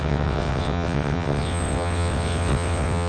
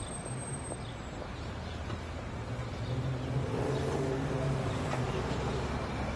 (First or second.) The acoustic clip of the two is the second